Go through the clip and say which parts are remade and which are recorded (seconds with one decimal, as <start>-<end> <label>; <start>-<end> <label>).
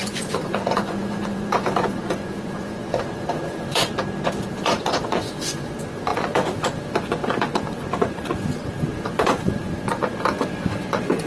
0.0-3.9 remade; 3.9-4.5 recorded; 4.5-11.3 remade